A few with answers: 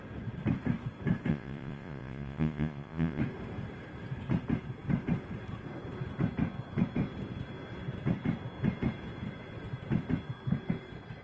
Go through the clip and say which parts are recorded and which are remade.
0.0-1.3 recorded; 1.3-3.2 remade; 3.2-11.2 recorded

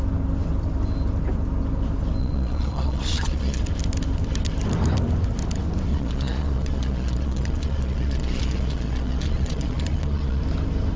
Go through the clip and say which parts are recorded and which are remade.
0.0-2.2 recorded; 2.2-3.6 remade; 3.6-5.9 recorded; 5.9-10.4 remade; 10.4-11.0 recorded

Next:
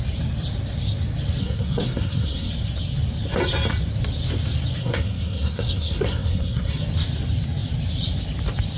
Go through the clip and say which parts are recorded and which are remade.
0.0-1.4 recorded; 1.4-2.5 remade; 2.5-4.8 recorded; 4.8-6.7 remade; 6.7-8.8 recorded

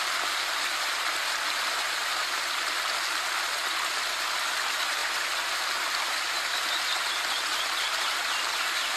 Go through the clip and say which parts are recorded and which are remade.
0.0-9.0 recorded

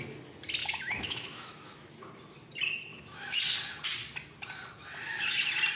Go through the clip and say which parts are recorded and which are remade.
0.0-0.6 recorded; 0.6-1.9 remade; 1.9-2.9 recorded; 2.9-3.4 remade; 3.4-5.8 recorded